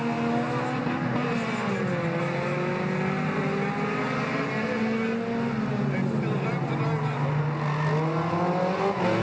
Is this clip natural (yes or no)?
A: yes